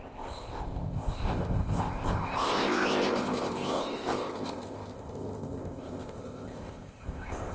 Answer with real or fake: fake